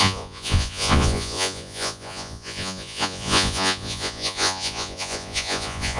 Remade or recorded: remade